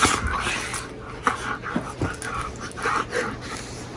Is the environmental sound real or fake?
real